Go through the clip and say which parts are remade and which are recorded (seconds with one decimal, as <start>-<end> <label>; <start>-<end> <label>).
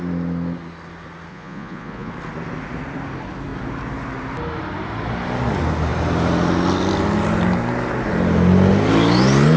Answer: 0.0-1.3 recorded; 1.3-2.1 remade; 2.1-9.6 recorded